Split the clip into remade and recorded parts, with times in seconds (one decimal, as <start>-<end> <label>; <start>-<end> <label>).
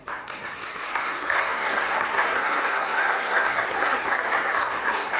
0.0-5.2 remade